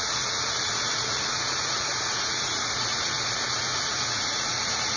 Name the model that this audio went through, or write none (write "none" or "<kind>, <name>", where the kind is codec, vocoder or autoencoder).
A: vocoder, Vocos